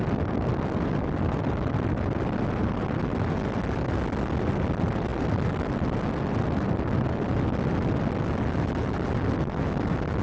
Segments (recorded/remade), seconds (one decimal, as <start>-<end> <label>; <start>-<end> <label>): 0.0-10.2 recorded